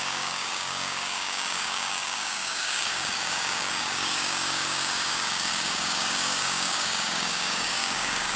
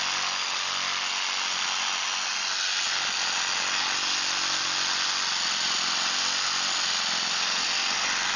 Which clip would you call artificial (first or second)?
first